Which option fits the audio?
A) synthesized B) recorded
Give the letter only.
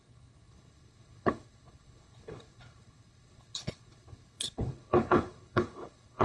A